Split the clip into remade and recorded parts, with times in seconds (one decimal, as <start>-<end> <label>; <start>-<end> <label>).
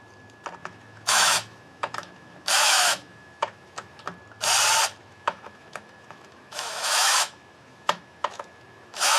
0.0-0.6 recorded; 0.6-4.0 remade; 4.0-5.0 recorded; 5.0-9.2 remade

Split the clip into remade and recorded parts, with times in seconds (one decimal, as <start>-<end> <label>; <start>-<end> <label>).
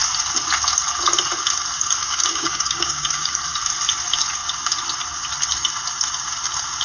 0.0-2.0 recorded; 2.0-3.3 remade; 3.3-6.8 recorded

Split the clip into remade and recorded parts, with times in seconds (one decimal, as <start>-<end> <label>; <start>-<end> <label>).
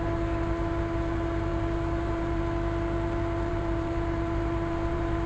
0.0-2.4 remade; 2.4-3.5 recorded; 3.5-5.3 remade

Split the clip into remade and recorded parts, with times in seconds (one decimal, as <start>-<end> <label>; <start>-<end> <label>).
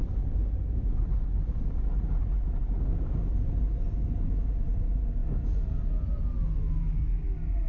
0.0-7.7 recorded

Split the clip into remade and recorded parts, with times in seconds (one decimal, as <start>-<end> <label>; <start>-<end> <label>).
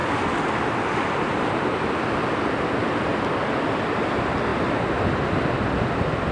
0.0-6.3 recorded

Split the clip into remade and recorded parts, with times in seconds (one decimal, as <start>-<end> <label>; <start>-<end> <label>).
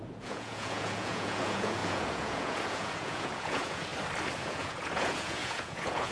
0.0-3.9 remade; 3.9-4.5 recorded; 4.5-6.1 remade